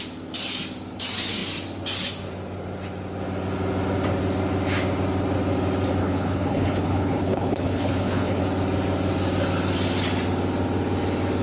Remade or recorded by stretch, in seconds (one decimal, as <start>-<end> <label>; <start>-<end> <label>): 0.0-6.0 recorded; 6.0-8.4 remade; 8.4-11.4 recorded